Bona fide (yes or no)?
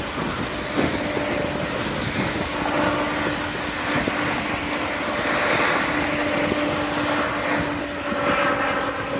yes